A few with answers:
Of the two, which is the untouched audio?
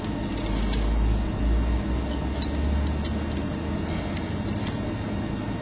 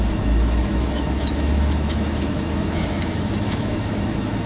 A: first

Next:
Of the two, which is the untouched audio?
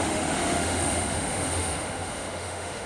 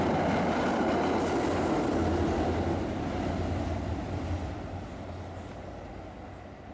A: second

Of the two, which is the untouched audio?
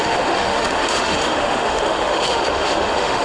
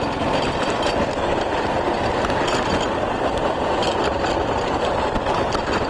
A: second